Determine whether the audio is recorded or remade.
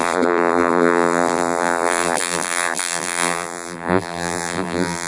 remade